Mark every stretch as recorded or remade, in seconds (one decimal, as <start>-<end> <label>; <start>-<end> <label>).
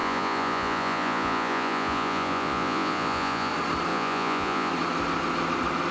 0.0-3.5 remade; 3.5-3.9 recorded; 3.9-4.7 remade; 4.7-5.9 recorded